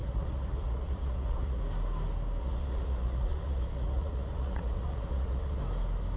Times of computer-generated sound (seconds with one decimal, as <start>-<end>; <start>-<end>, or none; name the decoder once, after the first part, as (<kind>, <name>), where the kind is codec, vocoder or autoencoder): 0.0-1.6 (vocoder, Vocos); 2.4-5.6